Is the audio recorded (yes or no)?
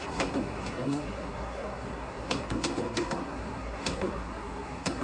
no